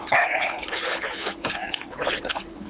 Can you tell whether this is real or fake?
fake